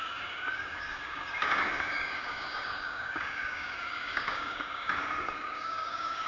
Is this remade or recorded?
remade